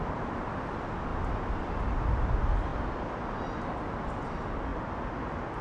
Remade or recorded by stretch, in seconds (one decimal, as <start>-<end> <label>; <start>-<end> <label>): 0.0-5.6 recorded